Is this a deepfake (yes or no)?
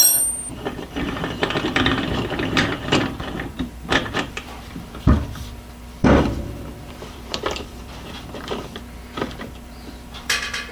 yes